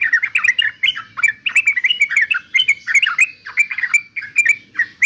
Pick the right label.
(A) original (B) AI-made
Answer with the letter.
A